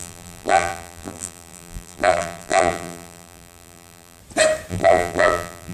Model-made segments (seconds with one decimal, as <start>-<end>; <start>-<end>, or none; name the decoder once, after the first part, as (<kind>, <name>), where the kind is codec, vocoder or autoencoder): 0.0-4.2 (vocoder, BigVGAN v2); 4.7-5.7